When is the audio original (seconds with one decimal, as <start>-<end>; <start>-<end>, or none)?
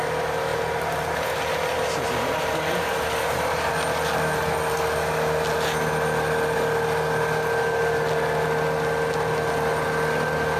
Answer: 0.0-0.5; 3.7-10.6